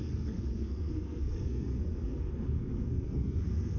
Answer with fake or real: fake